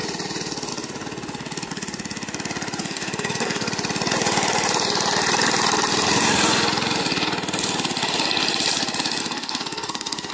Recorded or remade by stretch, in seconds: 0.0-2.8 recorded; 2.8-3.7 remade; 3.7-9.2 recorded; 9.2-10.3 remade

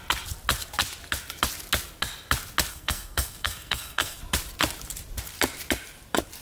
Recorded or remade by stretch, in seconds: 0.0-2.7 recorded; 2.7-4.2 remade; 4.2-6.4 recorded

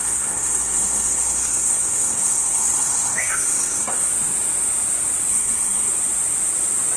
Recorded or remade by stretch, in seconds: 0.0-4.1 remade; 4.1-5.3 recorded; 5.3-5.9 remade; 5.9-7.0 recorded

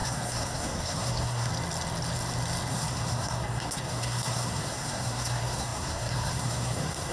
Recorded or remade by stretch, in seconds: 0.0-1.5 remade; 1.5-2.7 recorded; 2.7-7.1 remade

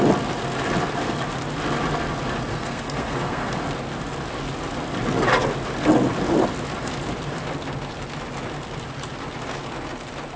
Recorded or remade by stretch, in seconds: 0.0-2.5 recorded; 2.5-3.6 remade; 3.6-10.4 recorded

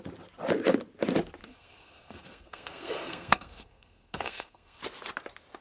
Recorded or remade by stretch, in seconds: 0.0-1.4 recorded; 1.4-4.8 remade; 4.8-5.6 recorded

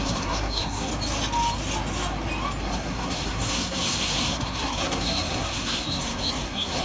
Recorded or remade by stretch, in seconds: 0.0-0.9 remade; 0.9-2.6 recorded; 2.6-6.8 remade

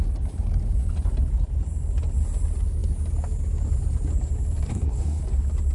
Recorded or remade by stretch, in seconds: 0.0-4.7 recorded; 4.7-5.2 remade; 5.2-5.7 recorded